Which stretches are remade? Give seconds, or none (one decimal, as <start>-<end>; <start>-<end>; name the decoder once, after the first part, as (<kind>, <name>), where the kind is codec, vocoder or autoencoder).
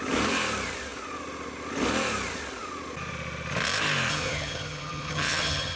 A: 4.1-5.8 (vocoder, HiFi-GAN)